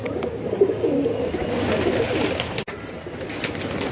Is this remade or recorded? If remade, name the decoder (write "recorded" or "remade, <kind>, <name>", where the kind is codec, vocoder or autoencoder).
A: recorded